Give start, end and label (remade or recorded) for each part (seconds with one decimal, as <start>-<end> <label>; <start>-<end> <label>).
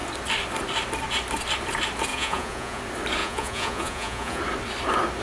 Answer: 0.0-2.1 recorded; 2.1-2.8 remade; 2.8-3.2 recorded; 3.2-4.4 remade; 4.4-5.2 recorded